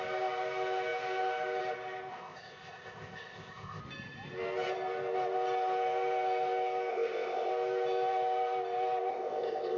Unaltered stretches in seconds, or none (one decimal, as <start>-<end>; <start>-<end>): 0.0-2.1; 3.8-6.9; 7.5-9.1